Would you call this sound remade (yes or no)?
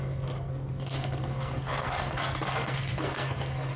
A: yes